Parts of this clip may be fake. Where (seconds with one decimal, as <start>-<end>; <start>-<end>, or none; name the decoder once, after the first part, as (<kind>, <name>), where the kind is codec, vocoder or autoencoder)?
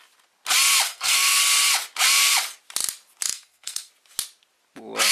0.9-1.4 (codec, SNAC); 3.3-3.9